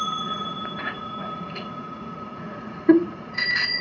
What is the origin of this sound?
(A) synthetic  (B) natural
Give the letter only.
A